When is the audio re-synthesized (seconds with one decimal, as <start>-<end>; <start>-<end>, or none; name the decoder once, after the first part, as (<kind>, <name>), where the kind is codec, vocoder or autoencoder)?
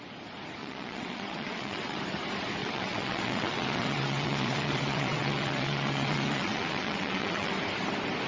0.6-2.0 (vocoder, WaveNeXt); 2.6-7.5